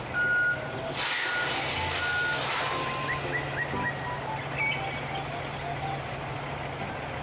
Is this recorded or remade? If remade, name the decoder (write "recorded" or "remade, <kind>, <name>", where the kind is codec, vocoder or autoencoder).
recorded